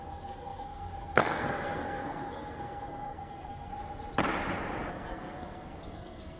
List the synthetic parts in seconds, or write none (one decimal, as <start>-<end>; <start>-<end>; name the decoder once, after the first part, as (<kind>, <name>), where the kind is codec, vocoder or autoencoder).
0.0-3.7 (codec, SNAC); 4.9-6.4